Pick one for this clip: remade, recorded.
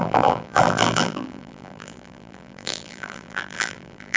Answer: remade